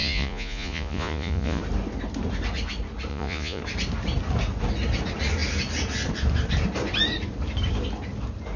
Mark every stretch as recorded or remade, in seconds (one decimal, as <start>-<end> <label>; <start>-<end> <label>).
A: 0.0-1.6 remade; 1.6-3.1 recorded; 3.1-3.6 remade; 3.6-8.6 recorded